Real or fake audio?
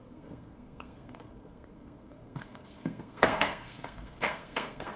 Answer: fake